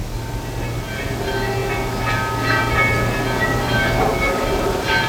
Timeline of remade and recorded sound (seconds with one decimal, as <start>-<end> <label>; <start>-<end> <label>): 0.0-5.1 recorded